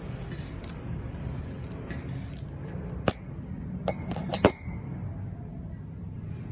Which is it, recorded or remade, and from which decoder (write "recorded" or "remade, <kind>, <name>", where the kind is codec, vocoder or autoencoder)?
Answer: recorded